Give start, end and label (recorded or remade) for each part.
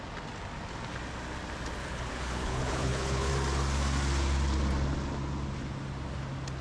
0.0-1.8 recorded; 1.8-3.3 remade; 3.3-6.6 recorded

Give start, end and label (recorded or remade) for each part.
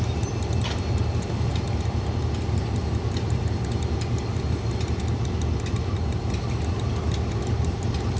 0.0-8.2 recorded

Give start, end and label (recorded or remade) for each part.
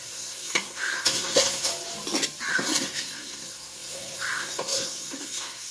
0.0-1.7 remade; 1.7-2.5 recorded; 2.5-5.7 remade